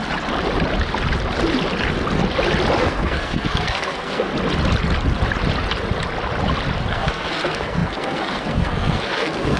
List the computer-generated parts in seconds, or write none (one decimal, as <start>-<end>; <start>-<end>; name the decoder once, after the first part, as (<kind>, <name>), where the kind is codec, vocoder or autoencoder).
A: 2.8-4.3 (codec, SNAC); 6.9-9.6